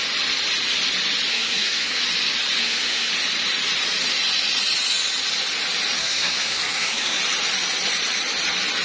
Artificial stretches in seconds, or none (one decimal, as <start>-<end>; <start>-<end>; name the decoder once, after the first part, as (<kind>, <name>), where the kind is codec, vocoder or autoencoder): 1.3-2.0 (codec, SNAC); 2.6-3.1; 6.0-7.2